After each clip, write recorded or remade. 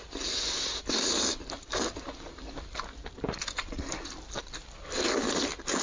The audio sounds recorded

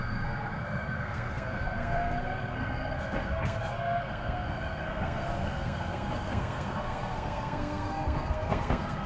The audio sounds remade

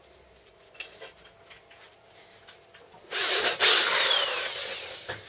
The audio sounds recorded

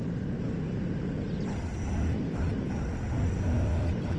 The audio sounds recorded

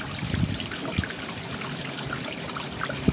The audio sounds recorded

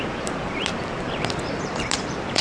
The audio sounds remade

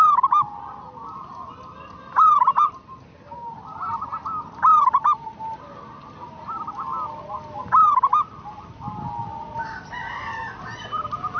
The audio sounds recorded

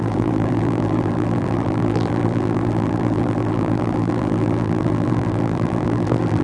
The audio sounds remade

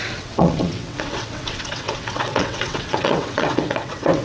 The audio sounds remade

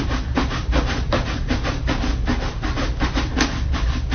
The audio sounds recorded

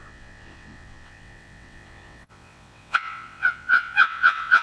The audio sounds remade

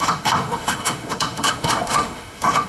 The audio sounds remade